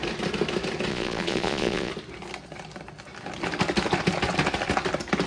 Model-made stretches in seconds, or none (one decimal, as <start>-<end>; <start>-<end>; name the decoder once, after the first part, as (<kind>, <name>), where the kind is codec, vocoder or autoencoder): 0.9-1.9 (vocoder, Vocos)